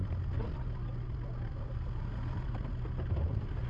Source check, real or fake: real